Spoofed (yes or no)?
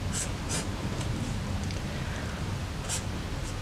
no